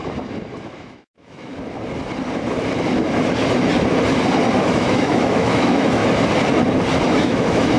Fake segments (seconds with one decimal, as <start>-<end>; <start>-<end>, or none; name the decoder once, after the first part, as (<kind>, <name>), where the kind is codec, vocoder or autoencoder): 0.6-1.5 (autoencoder, DAC-VAE); 4.6-6.0; 7.1-7.8

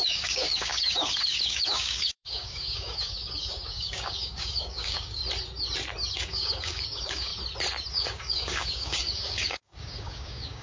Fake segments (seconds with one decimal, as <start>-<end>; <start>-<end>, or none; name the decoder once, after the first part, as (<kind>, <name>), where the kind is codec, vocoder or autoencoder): 0.0-5.2 (codec, DAC); 6.1-7.3; 7.9-10.6

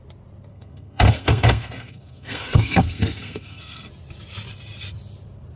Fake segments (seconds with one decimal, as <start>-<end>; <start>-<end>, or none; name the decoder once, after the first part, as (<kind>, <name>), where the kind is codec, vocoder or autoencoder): 0.5-3.9 (codec, SNAC)

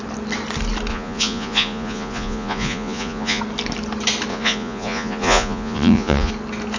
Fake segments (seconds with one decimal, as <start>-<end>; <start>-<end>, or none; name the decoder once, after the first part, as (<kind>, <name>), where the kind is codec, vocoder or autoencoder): 0.9-3.4 (vocoder, Vocos); 4.3-6.3

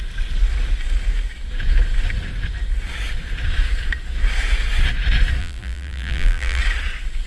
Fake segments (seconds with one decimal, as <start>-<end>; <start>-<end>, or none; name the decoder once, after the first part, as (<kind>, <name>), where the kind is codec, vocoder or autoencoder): 5.4-6.6 (vocoder, BigVGAN v2)

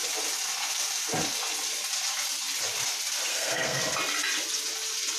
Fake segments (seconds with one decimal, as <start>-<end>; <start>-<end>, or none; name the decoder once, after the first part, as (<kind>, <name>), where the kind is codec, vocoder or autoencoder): 3.3-3.8 (codec, SNAC)

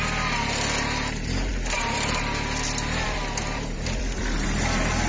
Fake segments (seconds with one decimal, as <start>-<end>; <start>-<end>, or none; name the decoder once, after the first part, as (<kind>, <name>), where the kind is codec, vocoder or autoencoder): 1.5-4.6 (vocoder, BigVGAN v2)